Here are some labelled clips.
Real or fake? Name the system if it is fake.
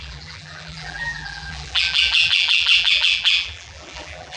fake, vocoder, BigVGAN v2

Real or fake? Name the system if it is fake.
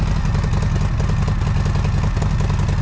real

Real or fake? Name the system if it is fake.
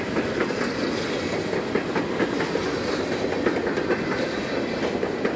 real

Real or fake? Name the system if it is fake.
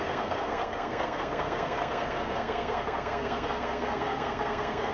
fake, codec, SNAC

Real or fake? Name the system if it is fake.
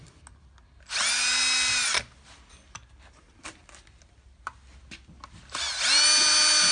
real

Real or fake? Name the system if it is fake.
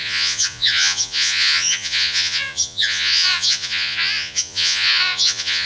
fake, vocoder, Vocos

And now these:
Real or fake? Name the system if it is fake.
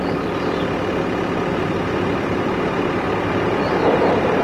fake, vocoder, BigVGAN v2